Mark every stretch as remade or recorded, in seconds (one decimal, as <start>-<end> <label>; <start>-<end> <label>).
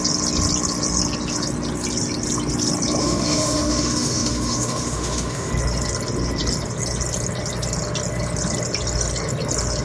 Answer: 0.0-3.0 recorded; 3.0-5.5 remade; 5.5-9.8 recorded